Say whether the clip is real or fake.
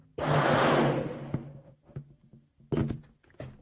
real